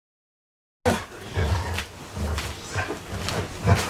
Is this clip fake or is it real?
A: real